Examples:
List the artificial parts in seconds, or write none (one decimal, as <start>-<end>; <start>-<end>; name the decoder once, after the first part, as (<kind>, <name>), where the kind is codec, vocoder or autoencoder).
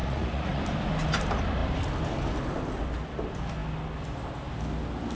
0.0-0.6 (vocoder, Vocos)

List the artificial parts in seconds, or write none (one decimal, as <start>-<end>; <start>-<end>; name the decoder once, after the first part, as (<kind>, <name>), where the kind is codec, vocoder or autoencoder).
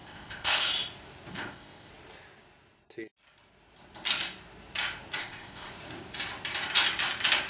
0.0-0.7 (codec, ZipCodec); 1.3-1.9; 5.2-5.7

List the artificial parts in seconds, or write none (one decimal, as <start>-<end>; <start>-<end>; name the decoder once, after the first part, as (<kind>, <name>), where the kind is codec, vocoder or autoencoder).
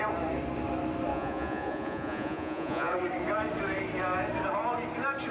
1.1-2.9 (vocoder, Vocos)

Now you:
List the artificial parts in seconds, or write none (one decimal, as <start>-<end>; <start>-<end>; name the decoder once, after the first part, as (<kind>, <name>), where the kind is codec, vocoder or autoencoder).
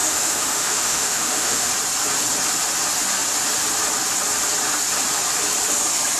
0.0-1.7 (autoencoder, DAC-VAE)